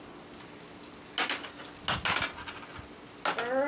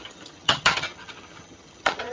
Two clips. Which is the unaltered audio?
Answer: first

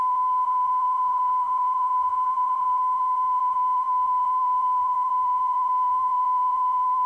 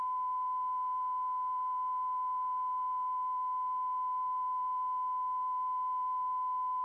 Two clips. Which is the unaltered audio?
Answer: second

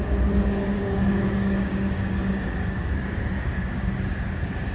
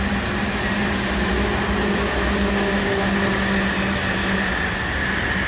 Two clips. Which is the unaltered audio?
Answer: second